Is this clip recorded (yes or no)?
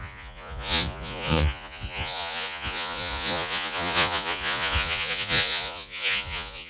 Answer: no